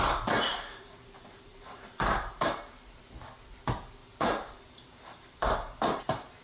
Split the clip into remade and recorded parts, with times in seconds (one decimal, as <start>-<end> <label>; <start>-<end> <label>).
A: 0.0-0.5 recorded; 0.5-2.7 remade; 2.7-4.0 recorded; 4.0-6.0 remade; 6.0-6.4 recorded